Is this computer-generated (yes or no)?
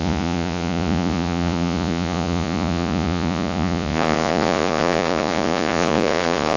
yes